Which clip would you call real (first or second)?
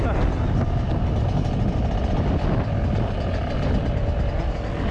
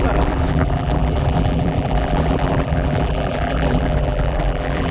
first